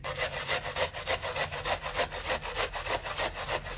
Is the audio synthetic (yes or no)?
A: no